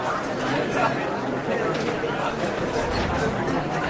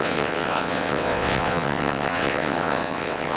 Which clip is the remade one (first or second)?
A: second